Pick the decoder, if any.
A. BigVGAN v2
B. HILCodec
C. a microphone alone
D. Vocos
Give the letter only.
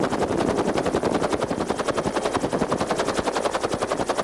A